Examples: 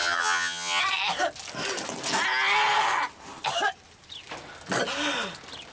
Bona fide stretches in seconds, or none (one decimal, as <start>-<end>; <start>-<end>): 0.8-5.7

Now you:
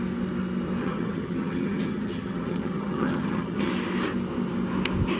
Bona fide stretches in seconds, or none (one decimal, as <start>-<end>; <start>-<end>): 0.0-0.8; 3.7-5.2

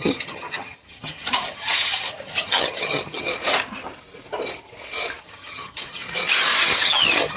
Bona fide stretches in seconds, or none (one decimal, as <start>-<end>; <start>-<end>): 3.3-5.2; 6.0-6.6

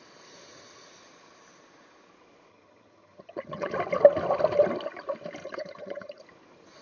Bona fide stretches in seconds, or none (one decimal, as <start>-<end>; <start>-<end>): 0.0-2.5; 3.7-5.4; 6.2-6.8